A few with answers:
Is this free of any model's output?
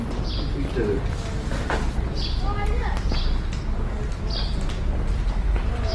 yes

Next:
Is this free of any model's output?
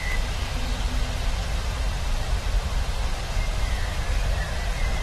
yes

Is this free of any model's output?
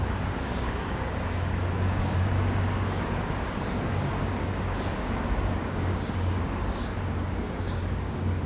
no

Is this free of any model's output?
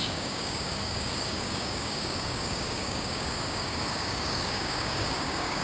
no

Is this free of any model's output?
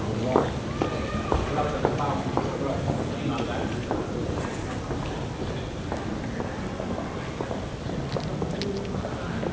yes